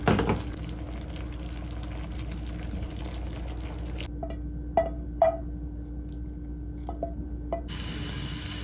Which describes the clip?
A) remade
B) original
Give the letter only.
B